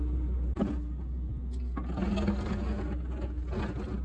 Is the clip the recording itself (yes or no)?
yes